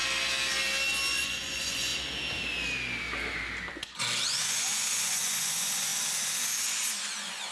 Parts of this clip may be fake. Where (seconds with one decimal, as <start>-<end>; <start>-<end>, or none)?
1.1-1.9; 3.7-5.9; 7.0-7.5